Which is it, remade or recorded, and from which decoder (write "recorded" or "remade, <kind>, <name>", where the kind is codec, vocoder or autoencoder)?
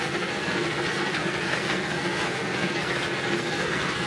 remade, codec, SNAC